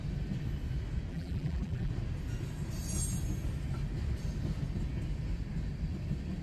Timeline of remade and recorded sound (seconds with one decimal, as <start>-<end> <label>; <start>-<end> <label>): 0.0-1.1 recorded; 1.1-1.9 remade; 1.9-6.4 recorded